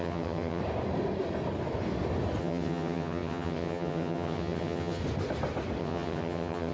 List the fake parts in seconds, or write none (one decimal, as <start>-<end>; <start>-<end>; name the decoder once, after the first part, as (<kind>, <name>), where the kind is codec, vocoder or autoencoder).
0.0-0.6 (vocoder, HiFi-GAN); 2.4-5.0; 5.8-6.7